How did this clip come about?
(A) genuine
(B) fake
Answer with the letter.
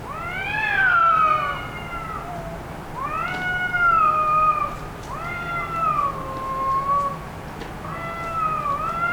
A